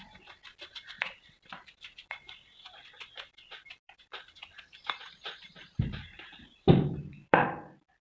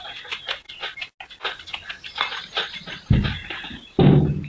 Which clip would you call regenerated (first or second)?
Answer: first